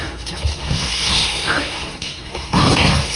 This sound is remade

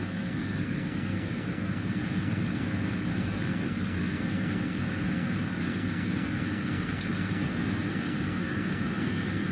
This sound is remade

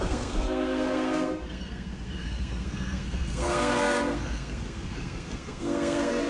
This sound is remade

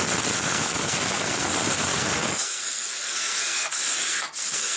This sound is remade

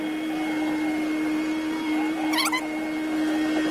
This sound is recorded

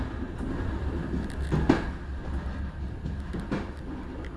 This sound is recorded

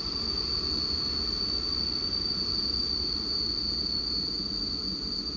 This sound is recorded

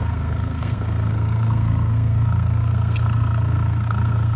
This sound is remade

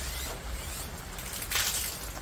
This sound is recorded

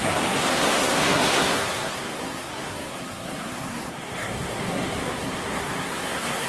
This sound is remade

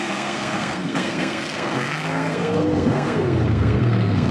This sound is remade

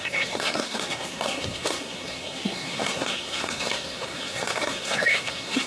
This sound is remade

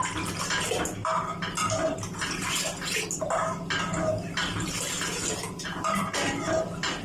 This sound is recorded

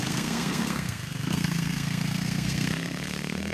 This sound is remade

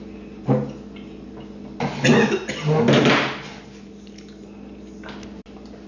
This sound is recorded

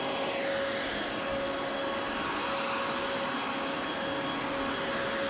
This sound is recorded